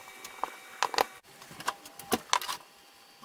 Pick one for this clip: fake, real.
real